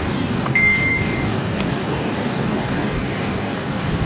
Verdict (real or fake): fake